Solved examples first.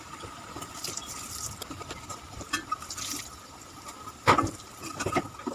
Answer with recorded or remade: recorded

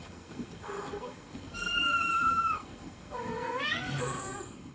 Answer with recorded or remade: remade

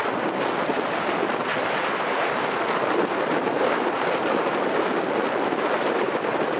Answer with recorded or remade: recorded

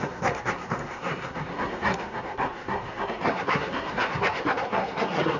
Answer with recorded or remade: remade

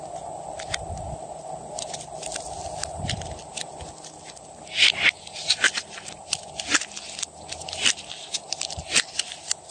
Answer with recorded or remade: recorded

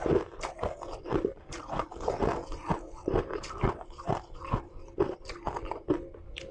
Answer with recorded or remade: recorded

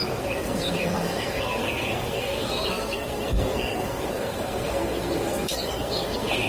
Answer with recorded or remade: remade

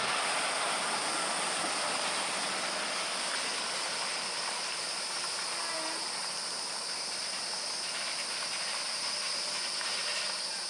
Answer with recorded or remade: recorded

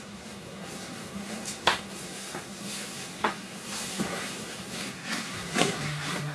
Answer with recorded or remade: remade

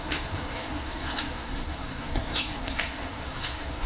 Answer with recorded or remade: remade